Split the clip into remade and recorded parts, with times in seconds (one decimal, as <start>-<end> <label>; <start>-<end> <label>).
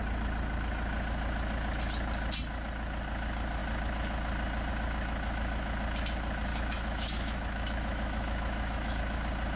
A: 0.0-6.5 recorded; 6.5-9.0 remade; 9.0-9.6 recorded